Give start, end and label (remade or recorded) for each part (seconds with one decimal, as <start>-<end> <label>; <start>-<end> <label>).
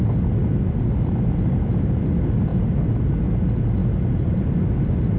0.0-3.8 recorded; 3.8-4.4 remade; 4.4-5.2 recorded